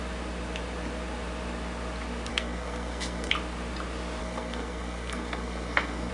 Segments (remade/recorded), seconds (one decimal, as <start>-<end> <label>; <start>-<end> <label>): 0.0-2.3 recorded; 2.3-3.3 remade; 3.3-4.2 recorded; 4.2-6.1 remade

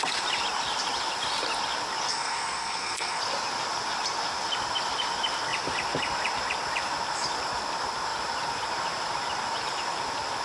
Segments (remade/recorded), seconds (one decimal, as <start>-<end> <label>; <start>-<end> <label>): 0.0-2.1 recorded; 2.1-3.2 remade; 3.2-10.4 recorded

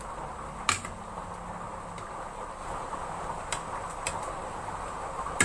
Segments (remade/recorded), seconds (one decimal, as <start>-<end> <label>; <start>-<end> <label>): 0.0-5.4 recorded

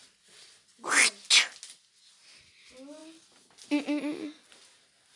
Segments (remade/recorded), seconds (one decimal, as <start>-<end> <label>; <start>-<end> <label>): 0.0-5.2 recorded

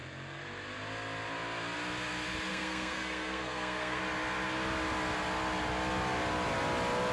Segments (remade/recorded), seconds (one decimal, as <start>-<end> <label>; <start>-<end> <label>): 0.0-2.5 recorded; 2.5-4.0 remade; 4.0-7.1 recorded

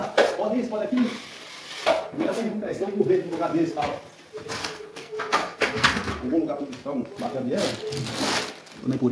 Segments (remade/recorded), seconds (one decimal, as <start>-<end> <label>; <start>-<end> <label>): 0.0-2.1 recorded; 2.1-3.1 remade; 3.1-4.6 recorded; 4.6-6.1 remade; 6.1-9.1 recorded